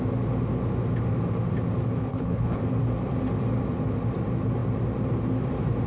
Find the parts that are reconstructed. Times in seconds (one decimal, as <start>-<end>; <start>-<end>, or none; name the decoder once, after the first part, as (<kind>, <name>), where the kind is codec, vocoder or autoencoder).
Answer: 2.1-2.6 (codec, HILCodec)